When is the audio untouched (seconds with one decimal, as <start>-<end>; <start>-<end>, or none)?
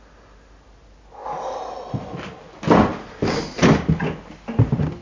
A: 0.0-5.0